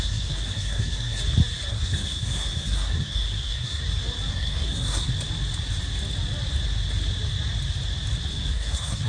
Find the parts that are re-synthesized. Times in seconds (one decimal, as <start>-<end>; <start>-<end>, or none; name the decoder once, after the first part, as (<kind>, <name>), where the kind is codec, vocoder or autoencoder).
0.0-1.2 (codec, SNAC); 1.7-3.8; 4.3-5.1; 8.3-9.1